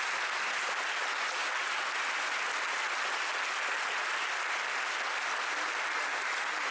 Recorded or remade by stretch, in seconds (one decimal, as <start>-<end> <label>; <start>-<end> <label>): 0.0-6.7 recorded